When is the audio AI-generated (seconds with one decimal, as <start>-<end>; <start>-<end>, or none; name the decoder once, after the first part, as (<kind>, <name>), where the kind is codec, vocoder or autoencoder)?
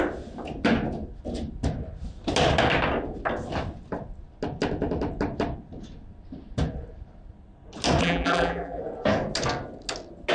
8.0-8.8 (vocoder, BigVGAN v2)